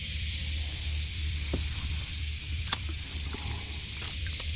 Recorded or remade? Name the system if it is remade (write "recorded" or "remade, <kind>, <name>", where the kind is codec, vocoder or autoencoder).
remade, vocoder, BigVGAN v2